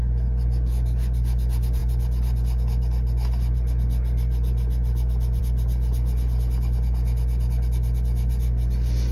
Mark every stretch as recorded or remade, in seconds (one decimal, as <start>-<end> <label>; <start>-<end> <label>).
0.0-9.1 recorded